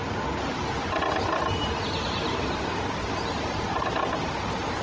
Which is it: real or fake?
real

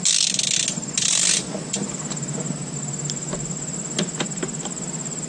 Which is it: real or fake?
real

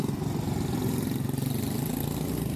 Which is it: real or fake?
real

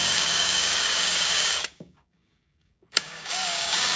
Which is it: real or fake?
fake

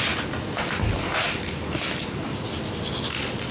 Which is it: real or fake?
real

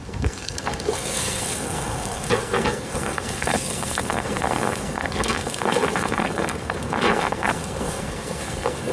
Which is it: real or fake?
fake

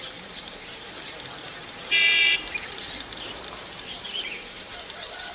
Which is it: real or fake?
fake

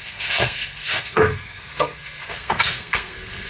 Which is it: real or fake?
fake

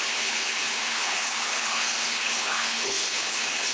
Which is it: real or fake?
fake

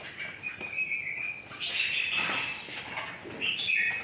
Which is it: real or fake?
real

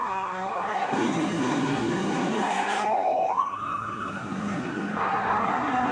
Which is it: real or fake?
fake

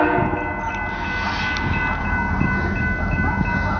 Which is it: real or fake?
real